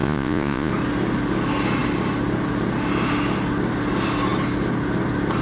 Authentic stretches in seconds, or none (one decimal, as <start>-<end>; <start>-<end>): 0.7-5.4